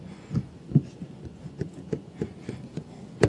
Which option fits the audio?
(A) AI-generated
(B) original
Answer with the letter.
A